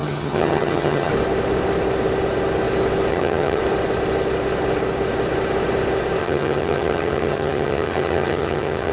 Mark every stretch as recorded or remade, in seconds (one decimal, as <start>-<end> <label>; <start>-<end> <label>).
0.0-1.1 remade; 1.1-3.1 recorded; 3.1-3.6 remade; 3.6-6.2 recorded; 6.2-8.9 remade